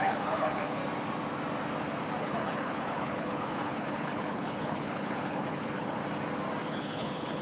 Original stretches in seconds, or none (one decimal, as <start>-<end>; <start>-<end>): 0.8-2.2; 6.0-6.6